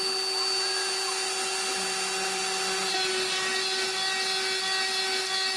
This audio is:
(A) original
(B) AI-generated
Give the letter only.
A